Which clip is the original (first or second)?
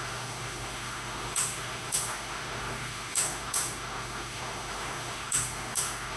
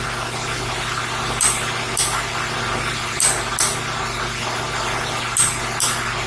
second